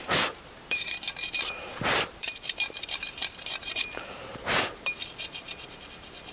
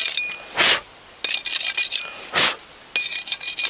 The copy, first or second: first